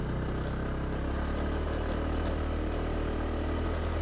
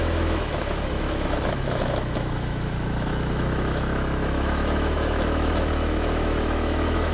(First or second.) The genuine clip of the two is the first